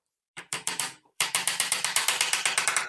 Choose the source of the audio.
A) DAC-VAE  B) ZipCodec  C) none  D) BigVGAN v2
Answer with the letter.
D